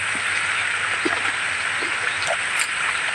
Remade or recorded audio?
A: recorded